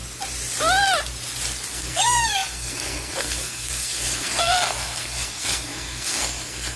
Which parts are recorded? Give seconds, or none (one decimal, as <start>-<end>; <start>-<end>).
0.0-1.7